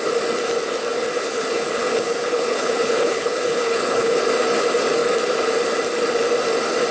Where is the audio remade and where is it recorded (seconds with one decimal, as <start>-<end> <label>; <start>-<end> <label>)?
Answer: 0.0-1.1 recorded; 1.1-4.2 remade; 4.2-6.9 recorded